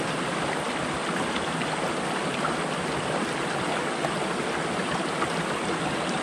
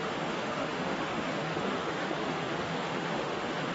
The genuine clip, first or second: first